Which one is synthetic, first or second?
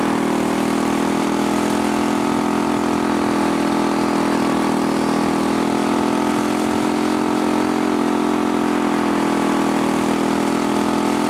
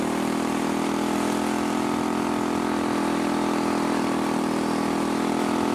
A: second